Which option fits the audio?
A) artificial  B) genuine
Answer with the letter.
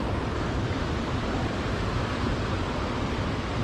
B